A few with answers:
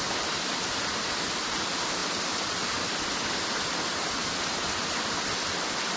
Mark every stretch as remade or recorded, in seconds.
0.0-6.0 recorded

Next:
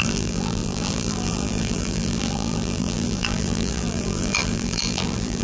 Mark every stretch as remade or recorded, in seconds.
0.0-5.4 remade

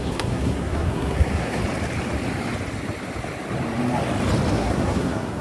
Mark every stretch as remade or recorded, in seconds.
0.0-1.6 remade; 1.6-4.5 recorded; 4.5-5.4 remade

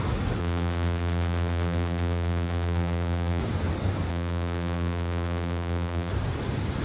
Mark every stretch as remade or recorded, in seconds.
0.0-0.4 recorded; 0.4-3.4 remade; 3.4-4.1 recorded; 4.1-6.1 remade; 6.1-6.8 recorded

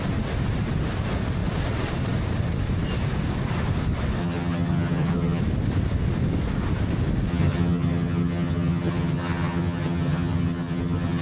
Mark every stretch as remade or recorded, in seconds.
0.0-4.2 recorded; 4.2-5.4 remade; 5.4-7.3 recorded; 7.3-11.2 remade

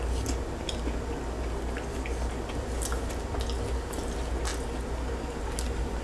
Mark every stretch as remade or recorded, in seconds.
0.0-6.0 recorded

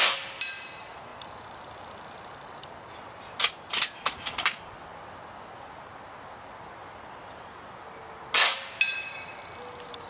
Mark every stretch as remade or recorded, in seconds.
0.0-10.1 recorded

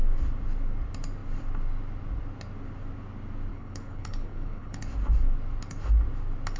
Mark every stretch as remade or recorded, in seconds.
0.0-3.5 recorded; 3.5-4.8 remade; 4.8-6.6 recorded